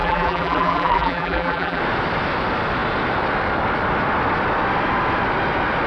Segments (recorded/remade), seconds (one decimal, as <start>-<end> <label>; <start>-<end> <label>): 0.0-1.8 remade; 1.8-5.9 recorded